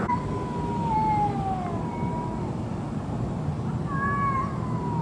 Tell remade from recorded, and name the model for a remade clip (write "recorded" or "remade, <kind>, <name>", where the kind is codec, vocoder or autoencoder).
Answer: recorded